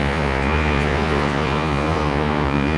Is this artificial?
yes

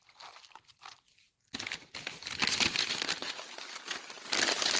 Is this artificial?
no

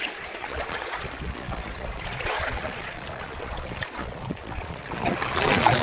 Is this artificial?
yes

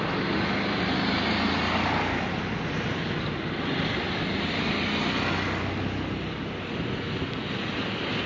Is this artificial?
no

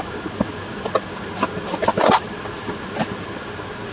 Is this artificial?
no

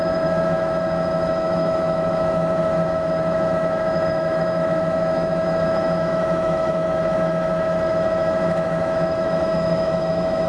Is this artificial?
yes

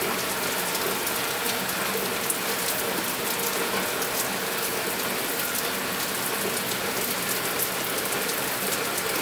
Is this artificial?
no